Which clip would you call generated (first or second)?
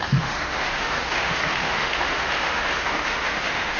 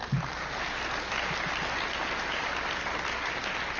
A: first